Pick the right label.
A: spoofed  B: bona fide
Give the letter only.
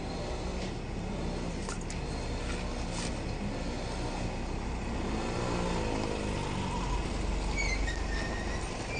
B